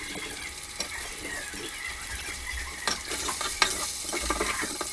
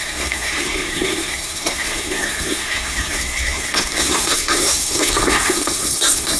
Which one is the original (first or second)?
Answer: first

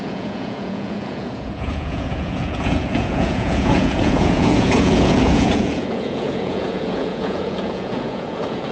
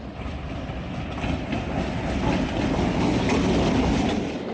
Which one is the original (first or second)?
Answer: second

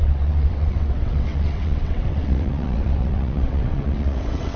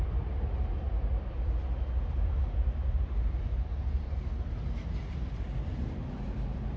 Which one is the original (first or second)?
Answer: second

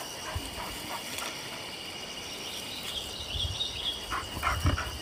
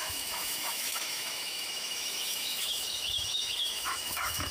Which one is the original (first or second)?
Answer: first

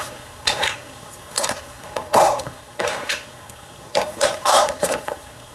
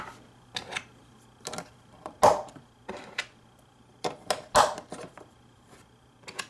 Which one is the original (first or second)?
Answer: second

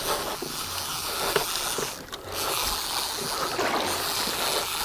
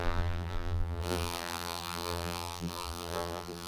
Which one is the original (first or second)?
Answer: first